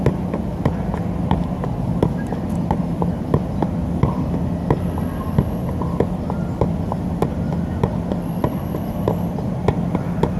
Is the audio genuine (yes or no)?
yes